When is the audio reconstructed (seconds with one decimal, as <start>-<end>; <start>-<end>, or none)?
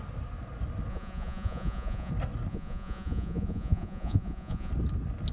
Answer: 0.9-2.1; 2.5-4.7